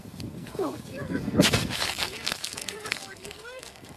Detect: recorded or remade remade